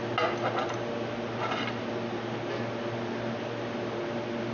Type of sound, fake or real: real